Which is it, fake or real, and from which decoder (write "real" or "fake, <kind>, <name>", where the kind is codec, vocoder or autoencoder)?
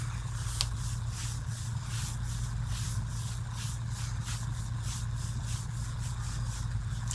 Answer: real